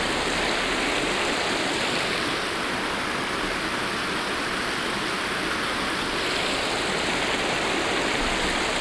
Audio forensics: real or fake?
real